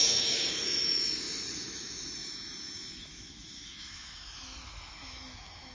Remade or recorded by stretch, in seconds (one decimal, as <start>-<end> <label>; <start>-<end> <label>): 0.0-5.7 remade